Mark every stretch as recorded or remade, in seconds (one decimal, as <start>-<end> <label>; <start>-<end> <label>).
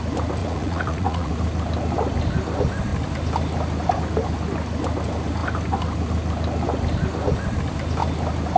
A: 0.0-0.4 recorded; 0.4-1.3 remade; 1.3-8.6 recorded